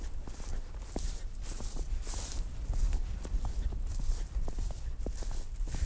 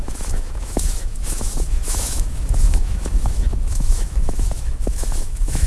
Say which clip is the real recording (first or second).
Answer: first